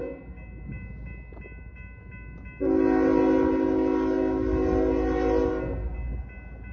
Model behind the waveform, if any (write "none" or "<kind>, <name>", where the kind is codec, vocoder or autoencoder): none